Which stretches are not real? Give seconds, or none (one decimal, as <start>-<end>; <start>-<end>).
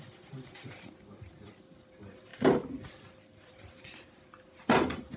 0.0-5.2